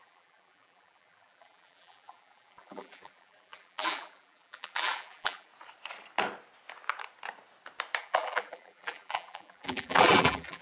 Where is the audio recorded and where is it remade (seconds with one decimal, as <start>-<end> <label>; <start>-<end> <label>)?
0.0-5.5 remade; 5.5-8.0 recorded; 8.0-10.6 remade